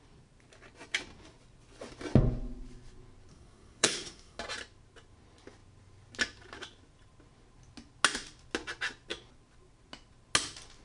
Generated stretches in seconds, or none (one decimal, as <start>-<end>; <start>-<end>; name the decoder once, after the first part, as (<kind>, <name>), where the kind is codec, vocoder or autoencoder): 3.3-4.4 (codec, SNAC)